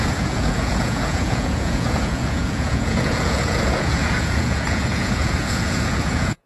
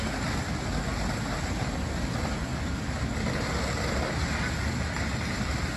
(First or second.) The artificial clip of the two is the first